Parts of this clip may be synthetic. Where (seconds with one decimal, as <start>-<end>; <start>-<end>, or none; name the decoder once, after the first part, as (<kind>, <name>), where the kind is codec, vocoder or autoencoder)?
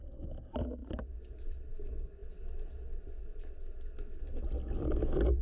0.8-1.3 (vocoder, Vocos)